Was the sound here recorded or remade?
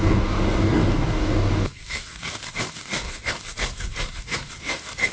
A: remade